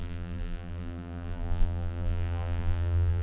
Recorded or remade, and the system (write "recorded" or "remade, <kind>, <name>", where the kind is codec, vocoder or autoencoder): remade, vocoder, BigVGAN v2